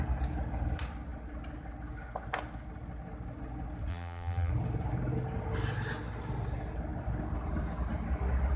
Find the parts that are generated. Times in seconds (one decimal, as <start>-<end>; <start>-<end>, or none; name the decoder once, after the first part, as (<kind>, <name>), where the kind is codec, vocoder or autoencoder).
3.9-4.5 (vocoder, BigVGAN v2)